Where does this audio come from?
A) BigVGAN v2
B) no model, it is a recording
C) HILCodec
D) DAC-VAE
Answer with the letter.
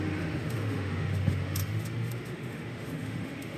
D